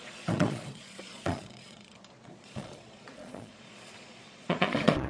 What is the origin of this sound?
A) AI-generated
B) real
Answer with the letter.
A